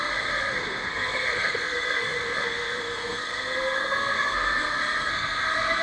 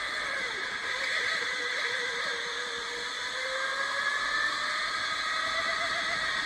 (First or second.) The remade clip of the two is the first